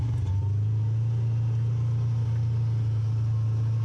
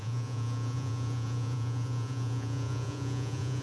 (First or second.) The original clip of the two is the first